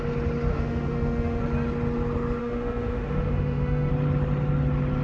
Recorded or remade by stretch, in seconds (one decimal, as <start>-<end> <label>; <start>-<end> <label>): 0.0-0.5 recorded; 0.5-1.4 remade; 1.4-2.4 recorded; 2.4-3.9 remade; 3.9-5.0 recorded